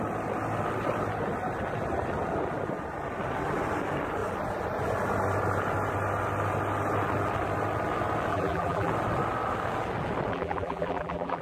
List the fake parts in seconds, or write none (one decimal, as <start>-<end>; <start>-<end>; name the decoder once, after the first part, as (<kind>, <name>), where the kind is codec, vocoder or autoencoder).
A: 8.3-8.9 (vocoder, BigVGAN v2); 10.3-11.4